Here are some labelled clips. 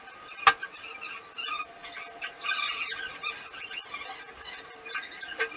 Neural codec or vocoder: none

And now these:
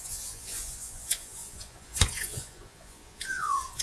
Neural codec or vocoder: vocoder, Vocos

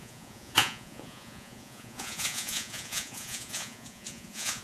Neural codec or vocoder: vocoder, Vocos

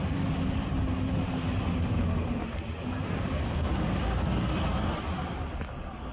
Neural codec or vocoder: none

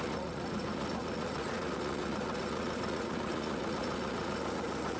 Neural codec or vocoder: vocoder, Vocos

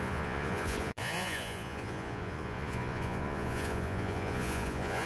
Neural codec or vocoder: vocoder, Vocos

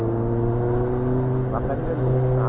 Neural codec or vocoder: none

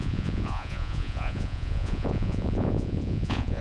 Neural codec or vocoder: vocoder, Vocos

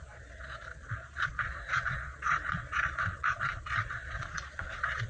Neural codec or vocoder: vocoder, Vocos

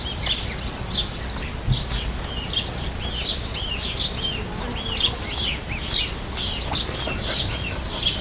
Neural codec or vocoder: none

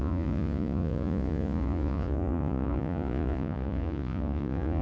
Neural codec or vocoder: vocoder, Vocos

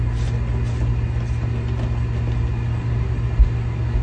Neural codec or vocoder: none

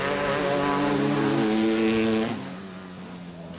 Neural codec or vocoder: none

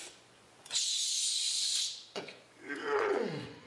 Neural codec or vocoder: vocoder, Vocos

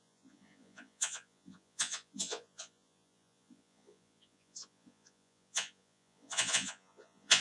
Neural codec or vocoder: vocoder, Vocos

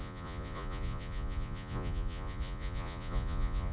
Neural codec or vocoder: vocoder, Vocos